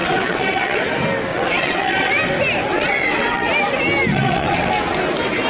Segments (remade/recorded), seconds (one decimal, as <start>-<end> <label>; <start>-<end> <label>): 0.0-0.8 remade; 0.8-1.3 recorded; 1.3-2.1 remade; 2.1-2.7 recorded; 2.7-3.5 remade; 3.5-4.1 recorded; 4.1-4.7 remade; 4.7-5.5 recorded